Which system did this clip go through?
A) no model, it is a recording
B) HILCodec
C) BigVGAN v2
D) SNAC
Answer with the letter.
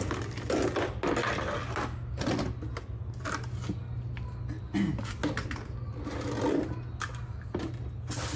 A